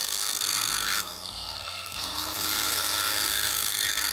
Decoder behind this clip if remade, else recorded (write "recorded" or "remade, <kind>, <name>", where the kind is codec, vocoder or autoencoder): remade, codec, SNAC